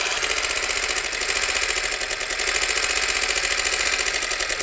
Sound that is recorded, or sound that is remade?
recorded